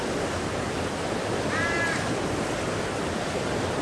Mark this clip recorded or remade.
remade